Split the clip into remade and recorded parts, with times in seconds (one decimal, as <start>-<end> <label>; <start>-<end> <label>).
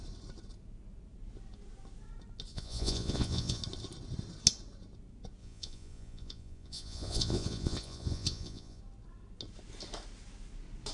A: 0.0-2.5 recorded; 2.5-3.6 remade; 3.6-5.4 recorded; 5.4-8.8 remade; 8.8-10.9 recorded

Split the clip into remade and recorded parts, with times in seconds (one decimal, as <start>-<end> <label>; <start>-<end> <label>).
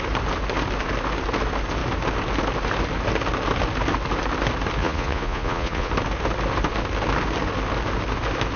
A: 0.0-4.8 recorded; 4.8-5.9 remade; 5.9-8.6 recorded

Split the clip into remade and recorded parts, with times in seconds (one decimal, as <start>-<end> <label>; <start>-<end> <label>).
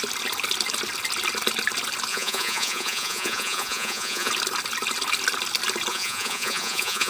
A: 0.0-2.1 recorded; 2.1-4.3 remade; 4.3-5.9 recorded; 5.9-7.1 remade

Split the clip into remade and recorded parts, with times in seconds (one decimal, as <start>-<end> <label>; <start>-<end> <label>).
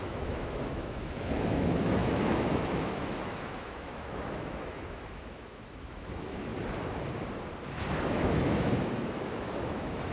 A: 0.0-6.5 remade; 6.5-8.1 recorded; 8.1-10.1 remade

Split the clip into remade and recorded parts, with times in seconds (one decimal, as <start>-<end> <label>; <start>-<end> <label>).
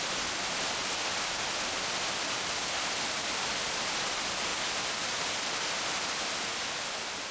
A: 0.0-7.3 recorded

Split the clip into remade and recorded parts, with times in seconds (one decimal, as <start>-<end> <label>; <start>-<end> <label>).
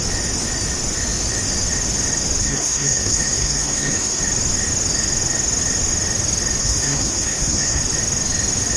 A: 0.0-2.4 recorded; 2.4-4.2 remade; 4.2-6.6 recorded; 6.6-7.8 remade; 7.8-8.8 recorded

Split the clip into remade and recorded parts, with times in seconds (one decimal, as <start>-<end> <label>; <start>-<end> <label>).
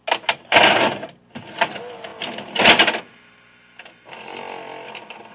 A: 0.0-5.3 recorded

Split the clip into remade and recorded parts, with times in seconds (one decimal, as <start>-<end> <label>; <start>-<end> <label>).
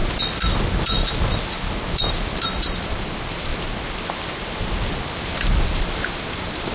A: 0.0-2.1 recorded; 2.1-3.5 remade; 3.5-4.9 recorded; 4.9-6.7 remade